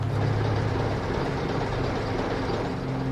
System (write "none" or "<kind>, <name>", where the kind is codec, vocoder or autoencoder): none